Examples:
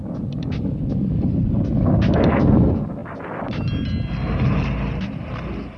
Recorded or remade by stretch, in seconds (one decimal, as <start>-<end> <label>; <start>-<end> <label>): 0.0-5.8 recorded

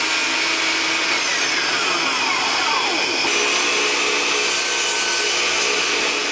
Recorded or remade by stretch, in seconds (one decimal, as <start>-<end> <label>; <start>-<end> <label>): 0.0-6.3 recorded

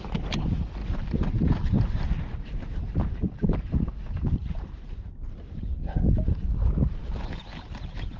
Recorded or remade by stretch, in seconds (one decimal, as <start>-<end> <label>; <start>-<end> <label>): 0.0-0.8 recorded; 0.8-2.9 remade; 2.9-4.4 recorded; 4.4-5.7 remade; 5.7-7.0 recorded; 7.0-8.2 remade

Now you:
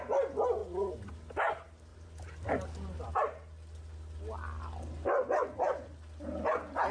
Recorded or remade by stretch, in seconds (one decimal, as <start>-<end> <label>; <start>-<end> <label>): 0.0-1.9 recorded; 1.9-3.1 remade; 3.1-6.9 recorded

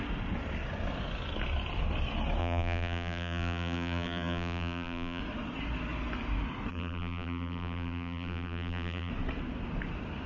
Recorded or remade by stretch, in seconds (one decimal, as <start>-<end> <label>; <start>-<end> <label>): 0.0-2.4 recorded; 2.4-5.2 remade; 5.2-6.7 recorded; 6.7-9.1 remade; 9.1-10.3 recorded